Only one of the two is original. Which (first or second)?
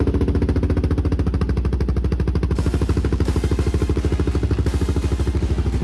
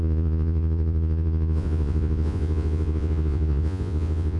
first